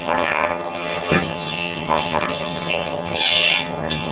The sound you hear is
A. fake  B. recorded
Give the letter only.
A